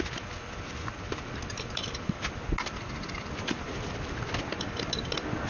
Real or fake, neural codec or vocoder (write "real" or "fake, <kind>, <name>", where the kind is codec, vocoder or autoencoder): real